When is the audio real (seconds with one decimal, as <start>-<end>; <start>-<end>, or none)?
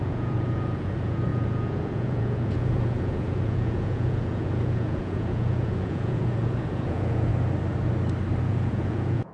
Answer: 7.3-8.4